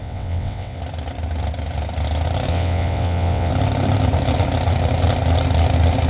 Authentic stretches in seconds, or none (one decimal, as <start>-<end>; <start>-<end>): 0.8-2.5; 3.5-6.1